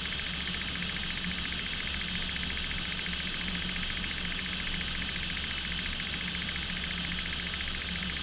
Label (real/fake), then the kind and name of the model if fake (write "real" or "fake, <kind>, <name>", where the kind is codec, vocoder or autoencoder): real